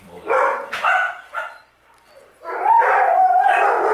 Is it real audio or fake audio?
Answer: fake